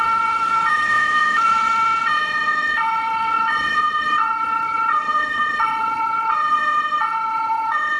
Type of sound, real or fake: fake